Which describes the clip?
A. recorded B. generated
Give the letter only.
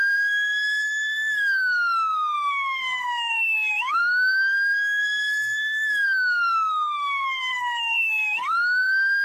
B